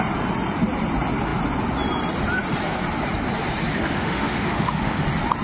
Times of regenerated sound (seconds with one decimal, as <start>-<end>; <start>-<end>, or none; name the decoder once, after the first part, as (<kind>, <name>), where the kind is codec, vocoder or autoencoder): 3.7-5.0 (autoencoder, DAC-VAE)